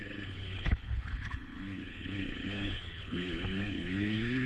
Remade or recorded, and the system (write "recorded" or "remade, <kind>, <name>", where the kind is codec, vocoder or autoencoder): remade, codec, HILCodec